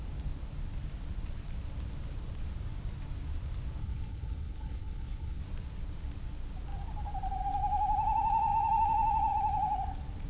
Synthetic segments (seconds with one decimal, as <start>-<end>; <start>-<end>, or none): 3.8-5.4